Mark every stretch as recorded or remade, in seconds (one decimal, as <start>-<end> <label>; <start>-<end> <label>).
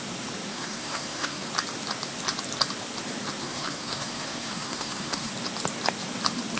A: 0.0-0.5 recorded; 0.5-1.5 remade; 1.5-3.4 recorded; 3.4-5.3 remade; 5.3-6.6 recorded